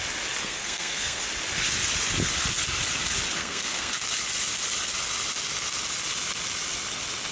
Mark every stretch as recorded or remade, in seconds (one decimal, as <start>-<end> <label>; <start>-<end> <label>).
0.0-0.4 recorded; 0.4-1.2 remade; 1.2-3.4 recorded; 3.4-3.9 remade; 3.9-7.3 recorded